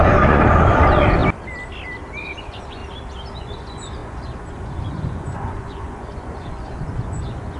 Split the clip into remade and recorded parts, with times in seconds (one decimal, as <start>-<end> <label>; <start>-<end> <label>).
0.0-1.2 remade; 1.2-2.4 recorded; 2.4-2.8 remade; 2.8-3.4 recorded; 3.4-7.6 remade